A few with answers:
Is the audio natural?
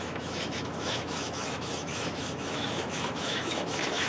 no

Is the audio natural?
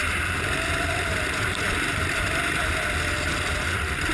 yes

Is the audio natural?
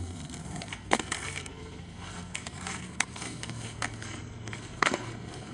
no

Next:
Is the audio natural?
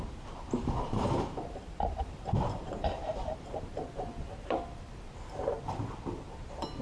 no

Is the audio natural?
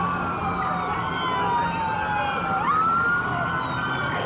yes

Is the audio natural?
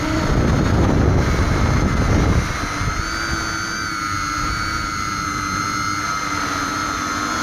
yes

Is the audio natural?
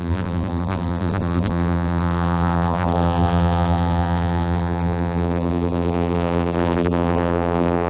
no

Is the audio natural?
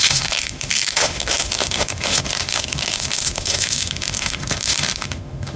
no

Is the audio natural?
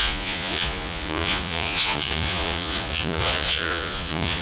no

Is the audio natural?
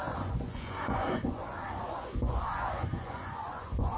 no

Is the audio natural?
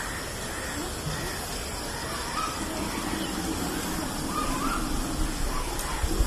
yes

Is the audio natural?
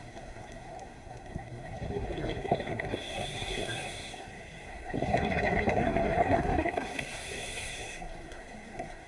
no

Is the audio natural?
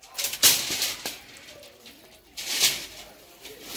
no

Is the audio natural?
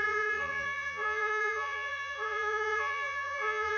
no